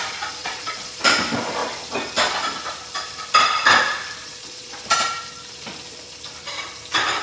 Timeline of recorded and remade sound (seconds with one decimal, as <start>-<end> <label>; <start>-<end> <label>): 0.0-0.4 recorded; 0.4-1.1 remade; 1.1-4.2 recorded; 4.2-4.8 remade; 4.8-7.2 recorded